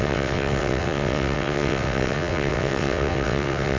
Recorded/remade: remade